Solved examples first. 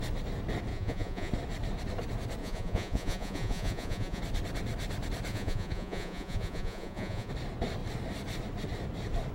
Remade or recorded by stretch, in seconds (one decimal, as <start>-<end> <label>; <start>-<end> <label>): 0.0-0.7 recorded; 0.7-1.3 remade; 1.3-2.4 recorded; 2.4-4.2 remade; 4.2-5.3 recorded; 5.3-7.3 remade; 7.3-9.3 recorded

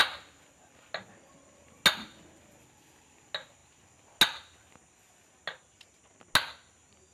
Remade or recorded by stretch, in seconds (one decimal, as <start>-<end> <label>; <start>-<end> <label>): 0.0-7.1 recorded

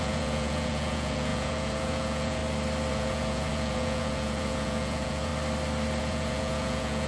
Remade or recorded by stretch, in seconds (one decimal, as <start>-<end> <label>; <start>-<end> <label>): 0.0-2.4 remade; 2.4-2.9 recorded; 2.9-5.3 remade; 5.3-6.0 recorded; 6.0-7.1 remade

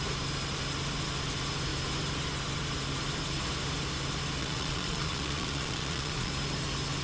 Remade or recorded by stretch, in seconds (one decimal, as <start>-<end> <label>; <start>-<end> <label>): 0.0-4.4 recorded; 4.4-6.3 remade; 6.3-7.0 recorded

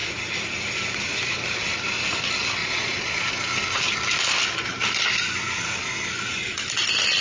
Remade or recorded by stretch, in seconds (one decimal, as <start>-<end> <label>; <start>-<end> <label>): 0.0-2.6 recorded; 2.6-3.3 remade; 3.3-7.2 recorded